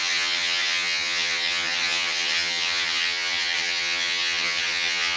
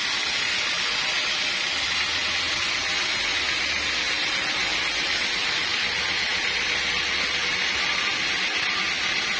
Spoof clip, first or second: first